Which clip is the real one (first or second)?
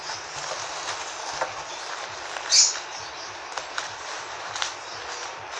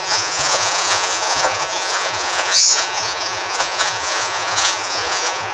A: first